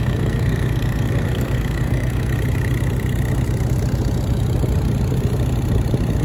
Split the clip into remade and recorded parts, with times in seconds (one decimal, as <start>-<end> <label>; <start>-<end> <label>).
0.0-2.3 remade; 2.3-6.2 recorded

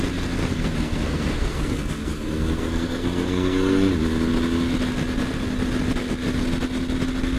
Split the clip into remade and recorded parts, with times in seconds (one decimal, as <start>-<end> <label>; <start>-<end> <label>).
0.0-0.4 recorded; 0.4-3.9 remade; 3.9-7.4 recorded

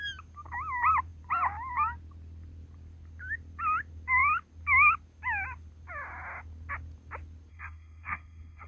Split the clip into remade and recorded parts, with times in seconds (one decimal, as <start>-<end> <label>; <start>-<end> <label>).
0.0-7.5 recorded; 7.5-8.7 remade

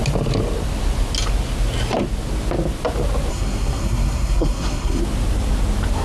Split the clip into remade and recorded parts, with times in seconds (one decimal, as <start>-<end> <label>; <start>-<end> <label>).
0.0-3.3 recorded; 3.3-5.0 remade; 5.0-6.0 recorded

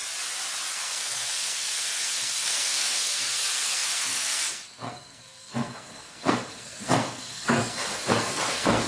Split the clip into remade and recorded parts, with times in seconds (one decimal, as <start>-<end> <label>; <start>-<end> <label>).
0.0-0.7 recorded; 0.7-8.9 remade

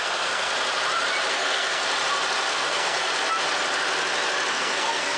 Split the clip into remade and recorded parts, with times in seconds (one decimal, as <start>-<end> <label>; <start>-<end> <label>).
0.0-0.5 remade; 0.5-1.3 recorded; 1.3-1.8 remade; 1.8-2.5 recorded; 2.5-3.1 remade; 3.1-4.5 recorded; 4.5-5.2 remade